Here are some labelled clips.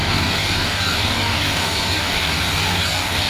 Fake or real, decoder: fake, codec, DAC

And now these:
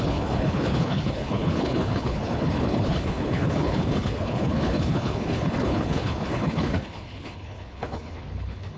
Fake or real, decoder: fake, codec, HILCodec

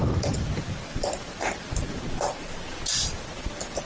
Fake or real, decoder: real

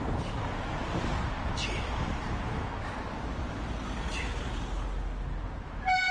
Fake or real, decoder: real